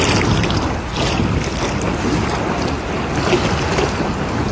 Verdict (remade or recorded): recorded